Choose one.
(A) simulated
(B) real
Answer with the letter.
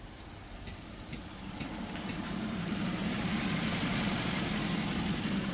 A